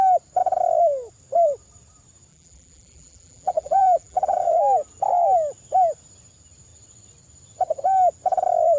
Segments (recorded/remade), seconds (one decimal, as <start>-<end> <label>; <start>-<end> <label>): 0.0-2.3 recorded; 2.3-4.6 remade; 4.6-8.8 recorded